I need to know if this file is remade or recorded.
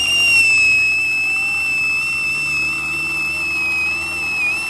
recorded